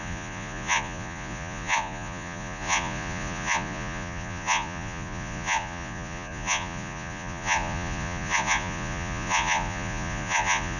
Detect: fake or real fake